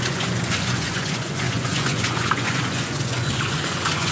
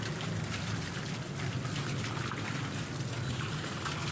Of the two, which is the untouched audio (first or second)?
second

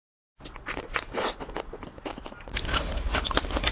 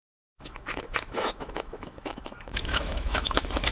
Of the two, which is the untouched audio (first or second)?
first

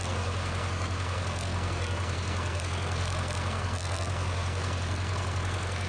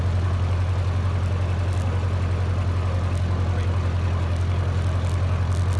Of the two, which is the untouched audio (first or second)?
second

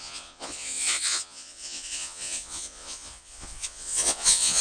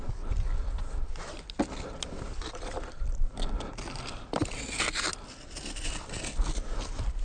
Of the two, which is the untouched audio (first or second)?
second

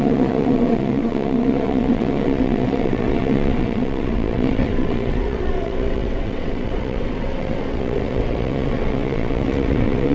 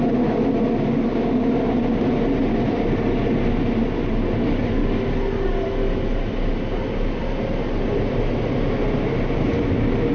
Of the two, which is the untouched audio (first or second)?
second